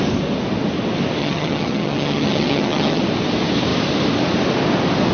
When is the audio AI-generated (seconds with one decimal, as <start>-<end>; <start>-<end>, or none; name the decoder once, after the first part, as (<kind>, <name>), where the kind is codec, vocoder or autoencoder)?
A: 1.2-3.0 (vocoder, HiFi-GAN)